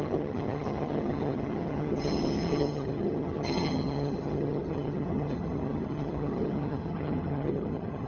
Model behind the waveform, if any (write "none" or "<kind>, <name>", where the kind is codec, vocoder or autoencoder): vocoder, HiFi-GAN